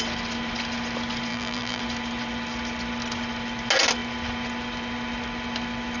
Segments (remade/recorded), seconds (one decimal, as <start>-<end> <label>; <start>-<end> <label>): 0.0-1.3 recorded; 1.3-1.8 remade; 1.8-6.0 recorded